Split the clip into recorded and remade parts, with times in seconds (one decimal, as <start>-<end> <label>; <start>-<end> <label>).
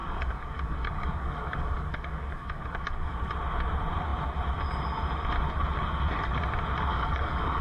0.0-3.3 remade; 3.3-6.9 recorded; 6.9-7.6 remade